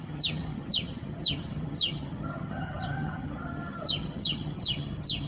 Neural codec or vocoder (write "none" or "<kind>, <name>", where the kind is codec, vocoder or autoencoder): vocoder, HiFi-GAN